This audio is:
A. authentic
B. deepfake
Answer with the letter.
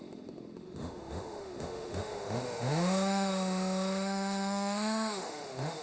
B